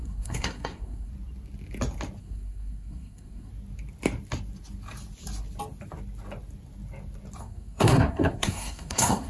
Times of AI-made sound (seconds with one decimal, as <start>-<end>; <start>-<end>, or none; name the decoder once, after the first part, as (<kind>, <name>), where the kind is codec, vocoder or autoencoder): 0.0-1.1 (codec, SNAC); 2.2-3.5; 7.4-9.3